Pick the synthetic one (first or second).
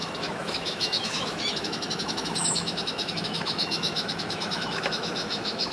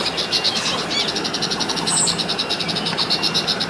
first